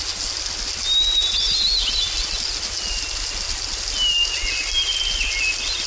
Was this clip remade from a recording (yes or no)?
no